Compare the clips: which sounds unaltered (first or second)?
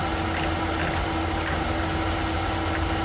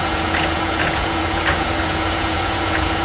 first